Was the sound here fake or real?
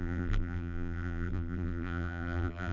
fake